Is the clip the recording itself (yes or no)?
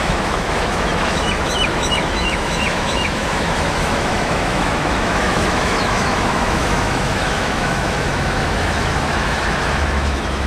no